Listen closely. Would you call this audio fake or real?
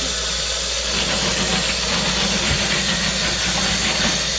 real